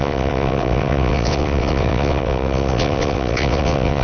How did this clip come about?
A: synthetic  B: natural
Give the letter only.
A